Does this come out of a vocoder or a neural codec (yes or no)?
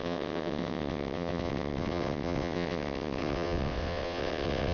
yes